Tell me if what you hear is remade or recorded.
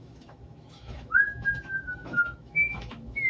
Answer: remade